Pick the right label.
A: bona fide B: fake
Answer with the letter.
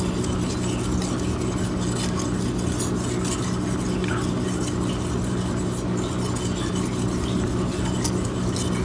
A